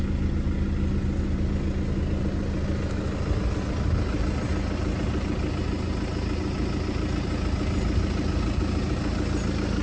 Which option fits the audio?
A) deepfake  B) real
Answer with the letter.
B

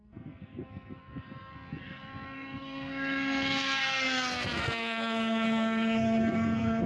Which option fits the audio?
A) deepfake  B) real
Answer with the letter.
A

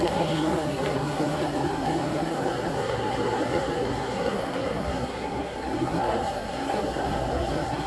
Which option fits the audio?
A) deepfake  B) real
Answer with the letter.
A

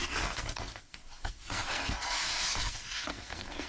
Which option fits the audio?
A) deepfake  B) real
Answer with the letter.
A